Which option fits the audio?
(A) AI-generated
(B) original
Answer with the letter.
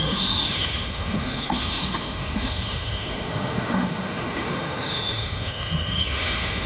A